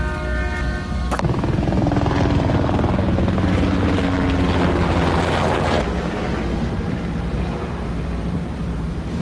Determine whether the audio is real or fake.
real